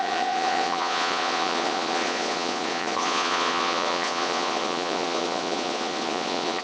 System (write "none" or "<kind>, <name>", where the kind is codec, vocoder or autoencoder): vocoder, Vocos